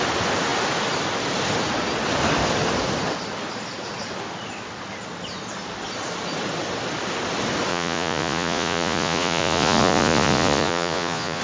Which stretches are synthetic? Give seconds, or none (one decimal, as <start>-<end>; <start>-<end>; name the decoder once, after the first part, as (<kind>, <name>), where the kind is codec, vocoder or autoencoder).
7.7-11.4 (vocoder, Vocos)